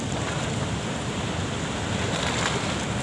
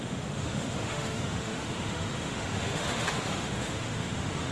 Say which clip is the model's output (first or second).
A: second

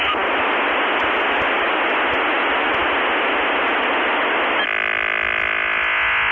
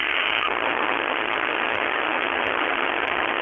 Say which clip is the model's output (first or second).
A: second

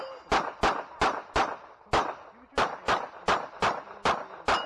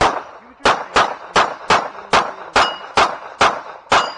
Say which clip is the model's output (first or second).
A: first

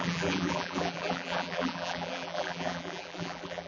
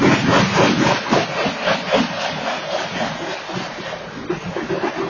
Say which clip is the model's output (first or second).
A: first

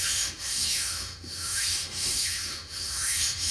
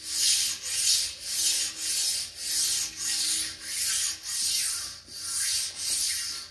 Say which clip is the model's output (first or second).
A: first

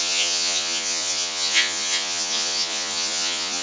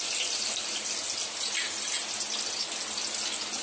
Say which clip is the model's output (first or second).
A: first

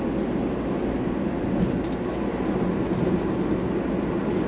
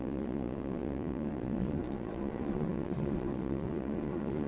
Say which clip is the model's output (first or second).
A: second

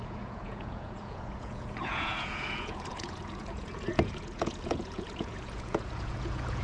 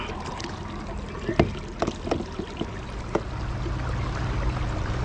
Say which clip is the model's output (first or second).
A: first